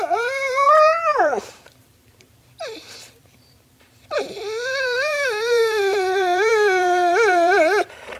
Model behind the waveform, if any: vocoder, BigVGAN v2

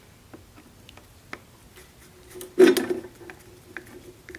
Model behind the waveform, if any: none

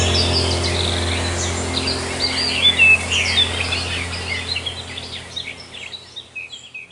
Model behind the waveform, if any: none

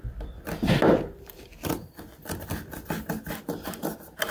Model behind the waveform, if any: none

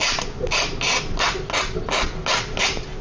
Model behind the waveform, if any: none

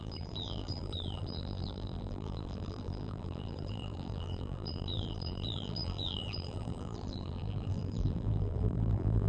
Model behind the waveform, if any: vocoder, BigVGAN v2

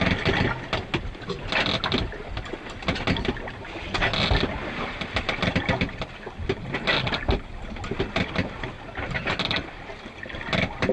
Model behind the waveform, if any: none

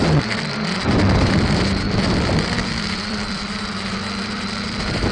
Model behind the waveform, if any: vocoder, BigVGAN v2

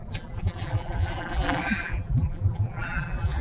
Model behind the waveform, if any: vocoder, BigVGAN v2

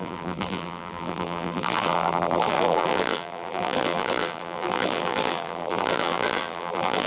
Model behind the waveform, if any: vocoder, BigVGAN v2